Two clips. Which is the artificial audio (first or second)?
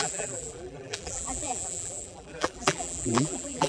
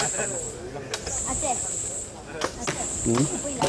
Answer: first